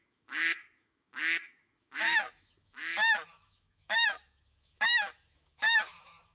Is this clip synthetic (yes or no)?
yes